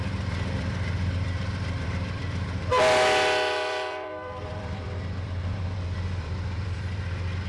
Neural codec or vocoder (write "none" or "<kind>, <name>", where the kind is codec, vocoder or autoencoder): vocoder, BigVGAN v2